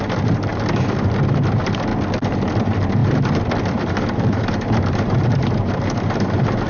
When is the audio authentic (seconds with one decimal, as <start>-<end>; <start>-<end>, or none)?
1.9-2.6